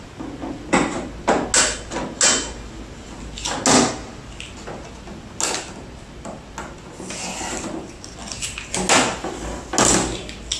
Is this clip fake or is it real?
real